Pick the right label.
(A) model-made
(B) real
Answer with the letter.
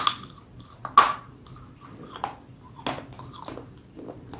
B